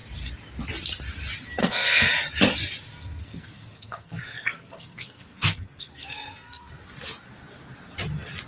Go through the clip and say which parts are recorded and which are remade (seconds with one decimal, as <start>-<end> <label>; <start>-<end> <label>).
0.0-1.6 recorded; 1.6-2.1 remade; 2.1-3.2 recorded; 3.2-6.7 remade; 6.7-8.5 recorded